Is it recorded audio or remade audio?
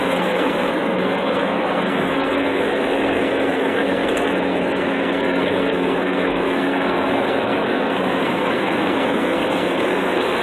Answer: remade